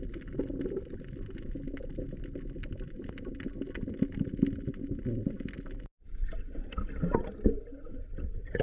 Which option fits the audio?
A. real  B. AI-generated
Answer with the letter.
A